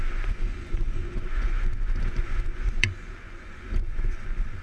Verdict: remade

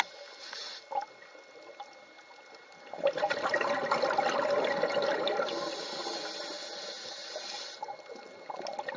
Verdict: recorded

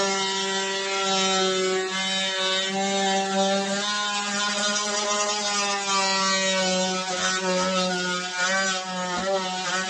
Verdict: recorded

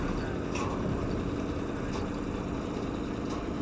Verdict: recorded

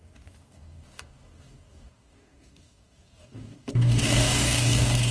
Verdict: remade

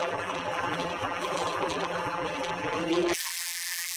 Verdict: remade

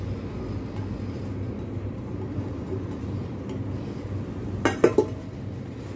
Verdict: recorded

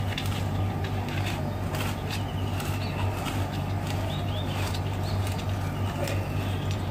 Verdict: recorded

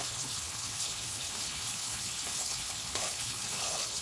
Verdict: remade